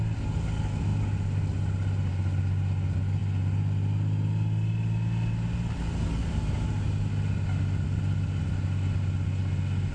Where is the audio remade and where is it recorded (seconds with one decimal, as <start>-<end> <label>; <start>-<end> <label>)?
0.0-9.9 recorded